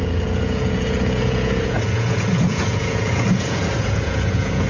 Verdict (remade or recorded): remade